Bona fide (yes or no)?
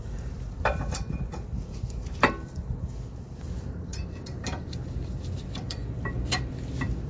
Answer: no